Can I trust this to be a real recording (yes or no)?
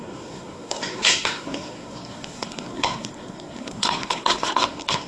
no